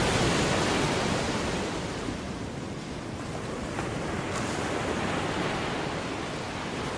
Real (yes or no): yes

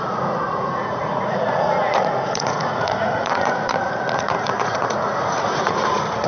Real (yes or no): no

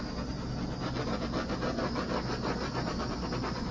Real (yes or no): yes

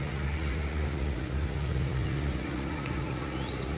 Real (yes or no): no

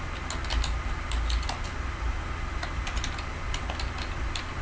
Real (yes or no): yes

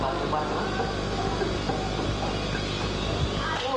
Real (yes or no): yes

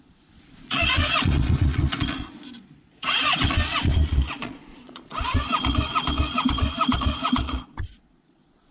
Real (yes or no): no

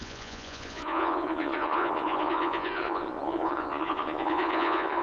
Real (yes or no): no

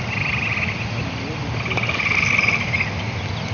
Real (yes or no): yes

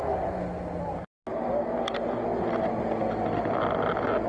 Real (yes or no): yes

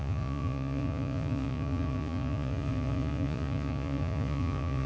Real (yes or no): no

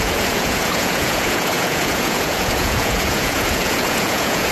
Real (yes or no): no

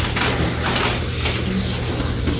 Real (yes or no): yes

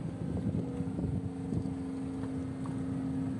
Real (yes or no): yes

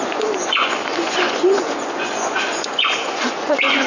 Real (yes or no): no